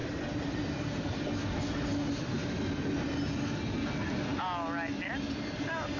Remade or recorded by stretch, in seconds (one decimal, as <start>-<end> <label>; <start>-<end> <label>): 0.0-6.0 recorded